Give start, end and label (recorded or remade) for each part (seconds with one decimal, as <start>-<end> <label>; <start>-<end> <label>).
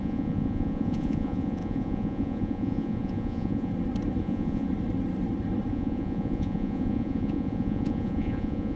0.0-3.7 remade; 3.7-4.2 recorded; 4.2-4.7 remade; 4.7-5.7 recorded; 5.7-8.8 remade